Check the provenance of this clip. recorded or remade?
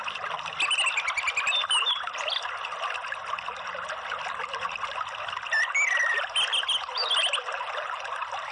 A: recorded